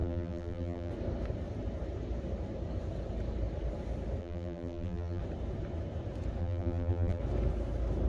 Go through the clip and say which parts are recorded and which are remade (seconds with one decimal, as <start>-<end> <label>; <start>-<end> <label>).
0.0-0.9 remade; 0.9-4.2 recorded; 4.2-5.2 remade; 5.2-6.4 recorded; 6.4-7.2 remade; 7.2-8.1 recorded